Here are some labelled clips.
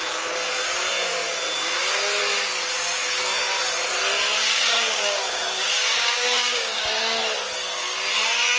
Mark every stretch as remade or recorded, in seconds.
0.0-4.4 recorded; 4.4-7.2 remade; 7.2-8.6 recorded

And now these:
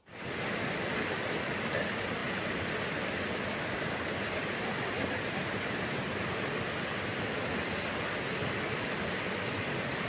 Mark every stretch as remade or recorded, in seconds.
0.0-10.1 recorded

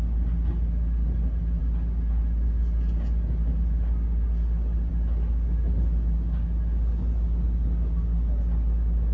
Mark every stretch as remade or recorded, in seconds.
0.0-9.1 recorded